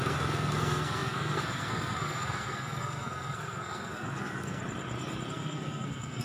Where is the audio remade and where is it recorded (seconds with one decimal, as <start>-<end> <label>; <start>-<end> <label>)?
0.0-4.6 remade; 4.6-5.3 recorded; 5.3-6.2 remade